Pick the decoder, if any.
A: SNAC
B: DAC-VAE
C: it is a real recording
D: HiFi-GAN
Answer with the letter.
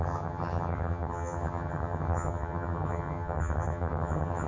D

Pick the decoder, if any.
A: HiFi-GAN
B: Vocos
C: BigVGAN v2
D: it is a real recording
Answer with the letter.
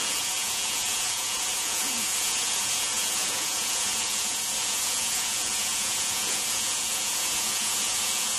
B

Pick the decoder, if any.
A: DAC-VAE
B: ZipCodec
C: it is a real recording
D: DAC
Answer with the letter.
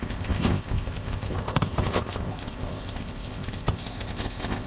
B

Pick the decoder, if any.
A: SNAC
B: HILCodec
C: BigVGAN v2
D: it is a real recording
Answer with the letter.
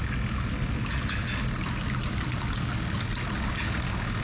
D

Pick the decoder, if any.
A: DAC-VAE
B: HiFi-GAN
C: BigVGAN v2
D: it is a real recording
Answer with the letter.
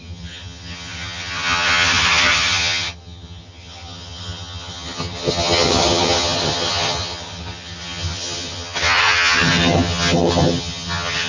B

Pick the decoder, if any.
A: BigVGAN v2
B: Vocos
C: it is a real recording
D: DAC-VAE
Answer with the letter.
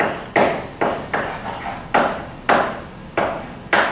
C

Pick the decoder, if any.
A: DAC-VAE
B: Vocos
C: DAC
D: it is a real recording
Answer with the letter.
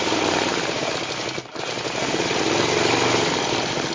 D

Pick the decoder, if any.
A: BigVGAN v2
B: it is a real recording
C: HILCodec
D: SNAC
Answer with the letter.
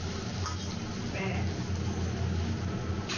B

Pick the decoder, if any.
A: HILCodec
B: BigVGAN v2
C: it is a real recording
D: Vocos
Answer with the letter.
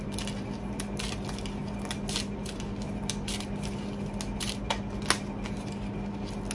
C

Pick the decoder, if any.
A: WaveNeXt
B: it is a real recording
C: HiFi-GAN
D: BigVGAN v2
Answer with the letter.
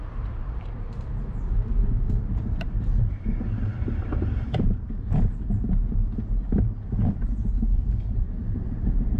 D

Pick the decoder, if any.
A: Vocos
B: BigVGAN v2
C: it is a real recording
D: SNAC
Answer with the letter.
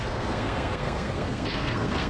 D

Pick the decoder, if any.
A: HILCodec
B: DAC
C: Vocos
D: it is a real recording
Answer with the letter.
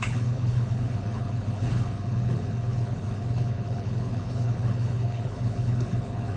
A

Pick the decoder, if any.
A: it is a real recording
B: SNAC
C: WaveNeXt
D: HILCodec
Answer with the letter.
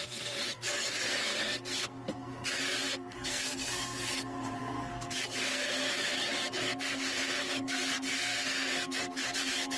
B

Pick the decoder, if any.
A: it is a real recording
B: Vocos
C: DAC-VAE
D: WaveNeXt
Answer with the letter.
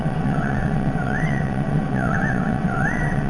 D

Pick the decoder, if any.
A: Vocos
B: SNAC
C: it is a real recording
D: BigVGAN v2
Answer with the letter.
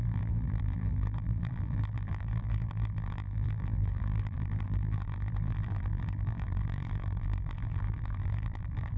D